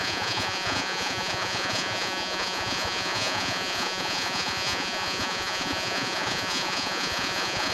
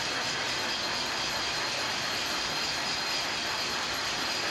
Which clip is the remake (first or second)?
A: first